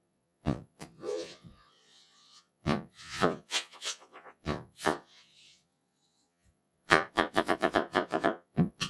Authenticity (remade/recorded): remade